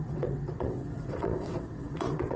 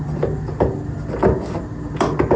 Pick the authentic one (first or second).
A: second